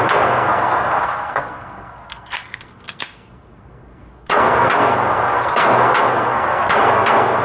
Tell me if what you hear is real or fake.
fake